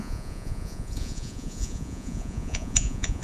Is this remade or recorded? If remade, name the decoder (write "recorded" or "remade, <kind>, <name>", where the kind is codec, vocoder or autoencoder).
remade, vocoder, Vocos